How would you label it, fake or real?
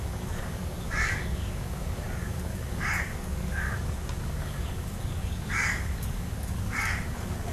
fake